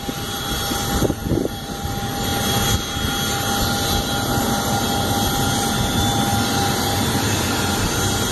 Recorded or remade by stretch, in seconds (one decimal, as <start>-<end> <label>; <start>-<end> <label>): 0.0-1.2 recorded; 1.2-1.9 remade; 1.9-8.3 recorded